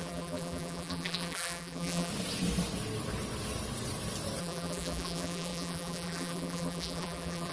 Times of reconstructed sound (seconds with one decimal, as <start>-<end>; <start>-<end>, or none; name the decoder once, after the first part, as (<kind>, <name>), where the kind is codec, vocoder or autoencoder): 0.0-2.1 (vocoder, BigVGAN v2); 4.4-7.5